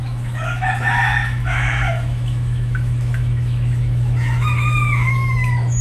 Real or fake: fake